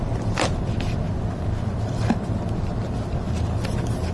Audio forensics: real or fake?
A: fake